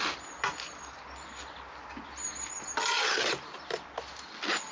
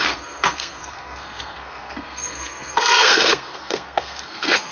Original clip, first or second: first